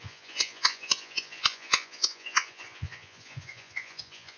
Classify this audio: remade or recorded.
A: remade